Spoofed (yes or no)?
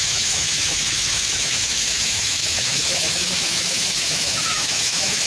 yes